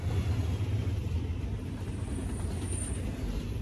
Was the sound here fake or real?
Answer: real